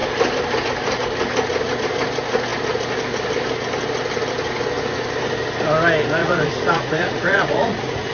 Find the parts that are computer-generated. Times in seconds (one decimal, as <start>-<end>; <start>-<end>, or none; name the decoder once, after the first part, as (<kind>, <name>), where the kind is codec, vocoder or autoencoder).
6.2-8.1 (vocoder, Vocos)